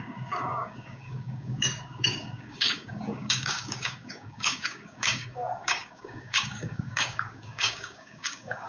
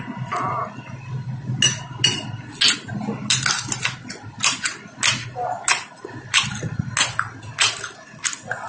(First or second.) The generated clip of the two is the first